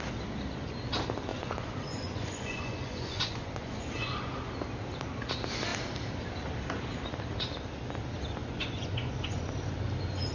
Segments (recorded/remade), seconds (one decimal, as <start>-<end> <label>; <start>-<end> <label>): 0.0-1.3 recorded; 1.3-4.3 remade; 4.3-8.4 recorded; 8.4-9.5 remade; 9.5-10.3 recorded

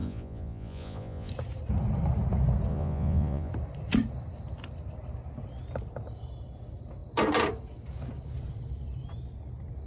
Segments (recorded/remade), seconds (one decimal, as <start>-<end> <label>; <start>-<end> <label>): 0.0-1.3 remade; 1.3-2.7 recorded; 2.7-3.5 remade; 3.5-9.9 recorded

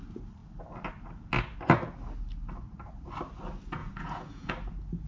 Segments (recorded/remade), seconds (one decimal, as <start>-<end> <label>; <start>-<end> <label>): 0.0-3.8 recorded; 3.8-4.5 remade; 4.5-5.1 recorded

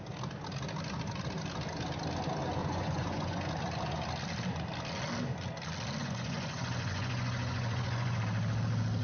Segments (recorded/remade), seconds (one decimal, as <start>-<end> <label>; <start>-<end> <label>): 0.0-2.6 recorded; 2.6-3.4 remade; 3.4-6.0 recorded; 6.0-8.2 remade; 8.2-9.0 recorded

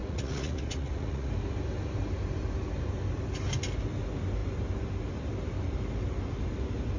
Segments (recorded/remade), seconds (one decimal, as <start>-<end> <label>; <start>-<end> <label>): 0.0-1.3 remade; 1.3-7.0 recorded

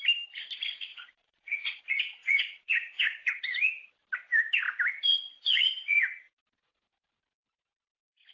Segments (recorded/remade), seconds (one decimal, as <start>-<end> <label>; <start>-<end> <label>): 0.0-0.9 recorded; 0.9-1.8 remade; 1.8-2.2 recorded; 2.2-3.4 remade; 3.4-5.1 recorded; 5.1-6.4 remade; 6.4-8.3 recorded

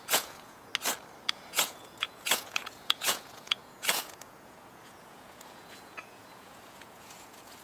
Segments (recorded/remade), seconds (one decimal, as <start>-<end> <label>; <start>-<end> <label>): 0.0-0.7 remade; 0.7-1.3 recorded; 1.3-7.6 remade

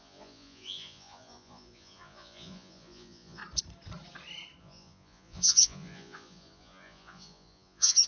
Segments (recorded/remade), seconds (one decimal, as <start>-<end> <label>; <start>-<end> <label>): 0.0-3.4 remade; 3.4-4.6 recorded; 4.6-8.1 remade